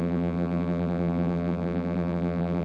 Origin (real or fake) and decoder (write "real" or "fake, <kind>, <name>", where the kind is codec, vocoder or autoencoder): fake, vocoder, BigVGAN v2